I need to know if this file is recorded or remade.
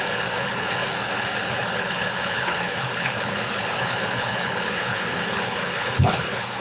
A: remade